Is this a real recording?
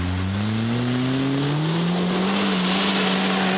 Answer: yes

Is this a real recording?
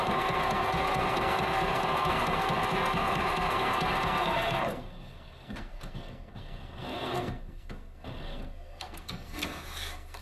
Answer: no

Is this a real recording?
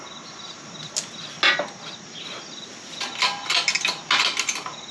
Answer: yes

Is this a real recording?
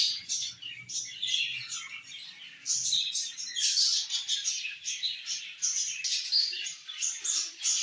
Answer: no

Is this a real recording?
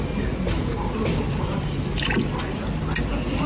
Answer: yes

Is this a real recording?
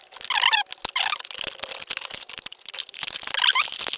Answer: yes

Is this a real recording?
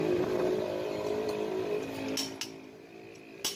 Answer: yes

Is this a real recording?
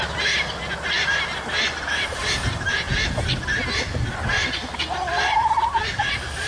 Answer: yes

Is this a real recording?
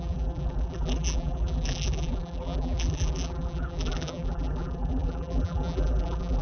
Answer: no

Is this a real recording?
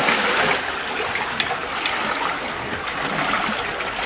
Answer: yes